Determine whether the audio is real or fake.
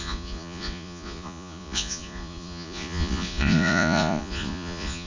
fake